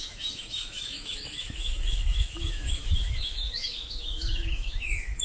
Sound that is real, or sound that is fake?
fake